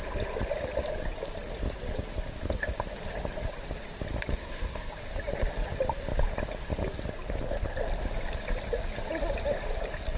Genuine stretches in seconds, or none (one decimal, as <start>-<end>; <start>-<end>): 0.0-4.3; 4.9-10.2